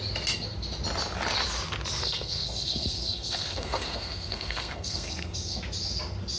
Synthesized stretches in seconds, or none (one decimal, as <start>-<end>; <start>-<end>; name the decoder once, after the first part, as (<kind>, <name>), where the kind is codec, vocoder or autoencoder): 2.0-5.6 (codec, SNAC)